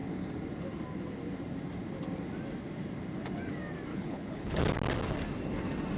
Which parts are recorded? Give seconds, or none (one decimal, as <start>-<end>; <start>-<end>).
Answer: 0.0-3.9; 4.7-6.0